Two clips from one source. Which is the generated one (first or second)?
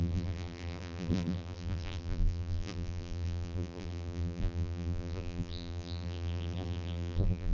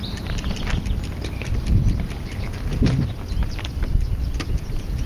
first